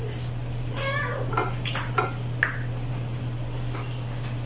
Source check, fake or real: real